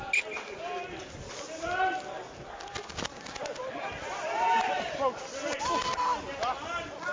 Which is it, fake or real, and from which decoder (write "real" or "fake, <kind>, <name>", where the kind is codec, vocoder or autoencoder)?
real